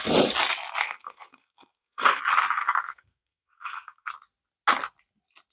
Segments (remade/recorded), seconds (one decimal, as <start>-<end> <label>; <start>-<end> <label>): 0.0-0.8 recorded; 0.8-2.2 remade; 2.2-2.6 recorded; 2.6-4.1 remade; 4.1-5.5 recorded